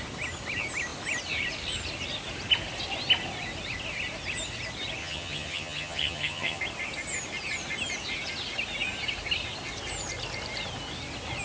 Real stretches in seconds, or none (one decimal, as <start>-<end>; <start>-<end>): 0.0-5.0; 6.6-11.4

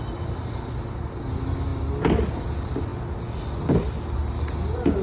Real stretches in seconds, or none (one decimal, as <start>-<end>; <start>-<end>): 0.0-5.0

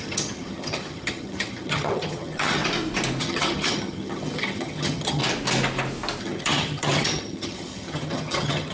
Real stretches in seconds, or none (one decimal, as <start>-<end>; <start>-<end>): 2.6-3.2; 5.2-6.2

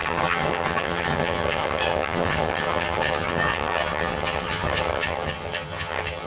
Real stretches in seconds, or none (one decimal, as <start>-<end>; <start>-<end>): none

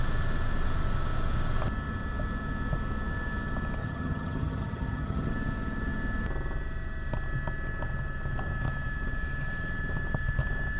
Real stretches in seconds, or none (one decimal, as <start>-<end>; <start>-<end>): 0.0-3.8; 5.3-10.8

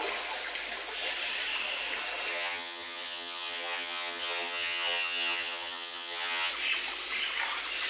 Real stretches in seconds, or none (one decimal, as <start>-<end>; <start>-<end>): 0.0-2.3; 6.5-7.9

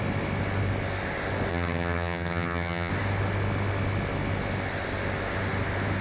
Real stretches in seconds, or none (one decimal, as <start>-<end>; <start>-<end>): 0.0-1.5; 2.9-6.0

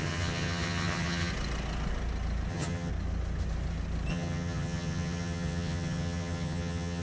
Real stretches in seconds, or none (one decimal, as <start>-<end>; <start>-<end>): 1.3-2.5; 2.9-4.1